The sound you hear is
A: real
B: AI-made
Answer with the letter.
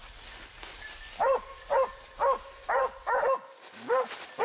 A